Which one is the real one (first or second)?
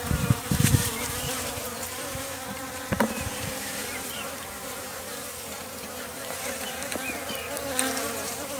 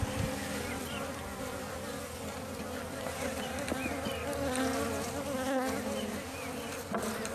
second